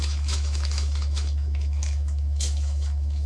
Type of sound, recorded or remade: remade